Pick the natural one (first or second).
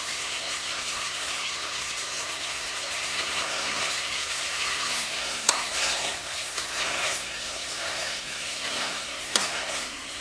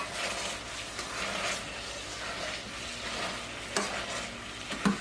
second